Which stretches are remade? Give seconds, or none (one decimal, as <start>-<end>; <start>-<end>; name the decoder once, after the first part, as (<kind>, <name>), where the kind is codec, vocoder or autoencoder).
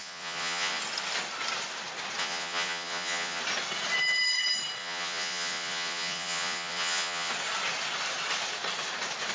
0.0-0.8 (vocoder, Vocos); 2.2-3.4; 4.8-7.3